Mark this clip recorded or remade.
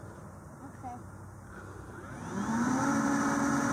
recorded